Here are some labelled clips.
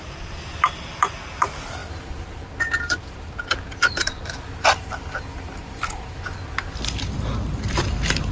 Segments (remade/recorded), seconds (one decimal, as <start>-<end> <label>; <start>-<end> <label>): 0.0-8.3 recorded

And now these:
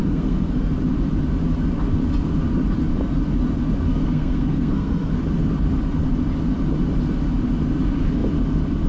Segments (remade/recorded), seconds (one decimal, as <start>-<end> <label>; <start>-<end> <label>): 0.0-0.7 remade; 0.7-3.9 recorded; 3.9-5.2 remade; 5.2-8.9 recorded

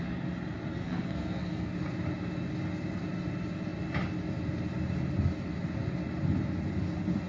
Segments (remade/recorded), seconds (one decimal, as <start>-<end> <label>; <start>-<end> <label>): 0.0-0.7 recorded; 0.7-1.7 remade; 1.7-7.3 recorded

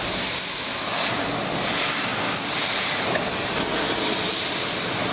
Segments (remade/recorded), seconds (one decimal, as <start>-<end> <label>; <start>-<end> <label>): 0.0-5.1 recorded